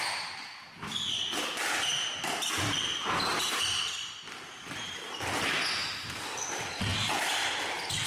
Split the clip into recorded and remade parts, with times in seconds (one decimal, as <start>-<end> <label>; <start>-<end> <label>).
0.0-8.1 recorded